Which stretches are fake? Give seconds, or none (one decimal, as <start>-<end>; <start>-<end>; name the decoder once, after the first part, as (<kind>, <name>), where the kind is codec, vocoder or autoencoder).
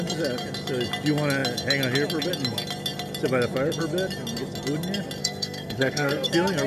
5.2-6.3 (codec, SNAC)